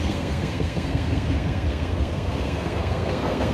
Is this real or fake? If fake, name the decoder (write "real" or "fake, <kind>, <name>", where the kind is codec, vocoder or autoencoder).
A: fake, codec, SNAC